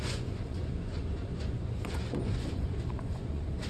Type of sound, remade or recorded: remade